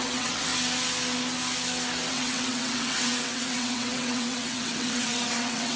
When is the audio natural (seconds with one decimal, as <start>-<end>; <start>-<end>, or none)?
0.5-2.1